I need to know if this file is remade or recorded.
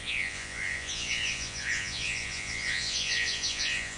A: remade